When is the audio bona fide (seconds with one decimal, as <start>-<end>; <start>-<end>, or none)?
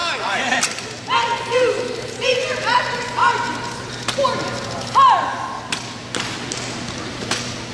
3.2-7.1